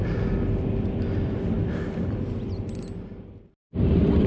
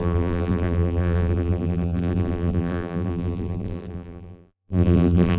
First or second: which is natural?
first